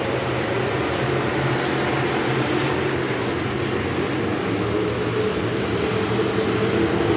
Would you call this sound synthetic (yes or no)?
no